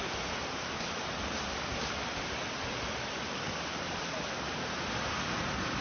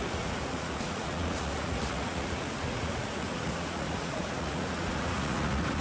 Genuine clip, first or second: first